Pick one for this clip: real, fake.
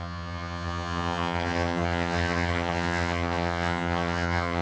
fake